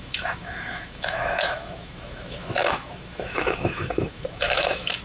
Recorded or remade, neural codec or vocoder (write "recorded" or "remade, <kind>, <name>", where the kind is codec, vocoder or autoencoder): remade, autoencoder, DAC-VAE